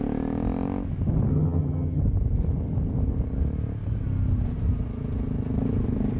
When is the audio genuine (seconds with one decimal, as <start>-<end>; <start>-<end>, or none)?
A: 0.0-1.3; 2.0-6.2